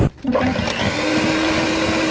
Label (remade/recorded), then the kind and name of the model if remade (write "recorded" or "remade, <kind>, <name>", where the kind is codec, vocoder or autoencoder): recorded